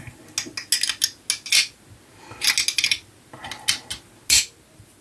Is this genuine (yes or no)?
yes